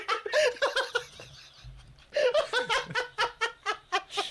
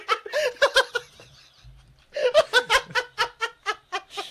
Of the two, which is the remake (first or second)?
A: first